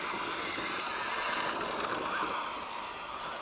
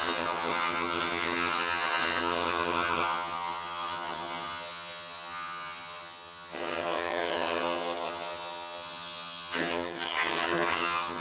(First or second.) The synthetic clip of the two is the second